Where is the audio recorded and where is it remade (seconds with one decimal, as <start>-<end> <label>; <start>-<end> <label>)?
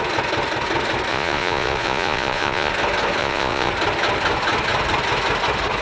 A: 0.0-1.1 recorded; 1.1-2.7 remade; 2.7-3.2 recorded; 3.2-3.7 remade; 3.7-5.8 recorded